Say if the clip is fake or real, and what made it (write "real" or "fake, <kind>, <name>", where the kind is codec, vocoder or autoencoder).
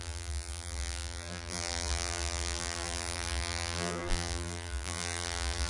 fake, vocoder, BigVGAN v2